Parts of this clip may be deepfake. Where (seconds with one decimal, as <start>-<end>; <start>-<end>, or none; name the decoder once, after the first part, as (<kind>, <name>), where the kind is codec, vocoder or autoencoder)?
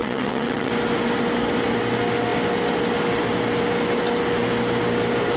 0.0-0.7 (vocoder, WaveNeXt)